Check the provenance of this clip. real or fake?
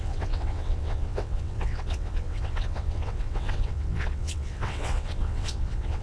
fake